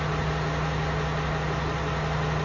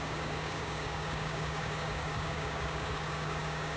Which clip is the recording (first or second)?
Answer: first